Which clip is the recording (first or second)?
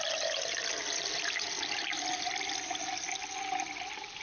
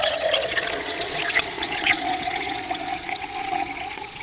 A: first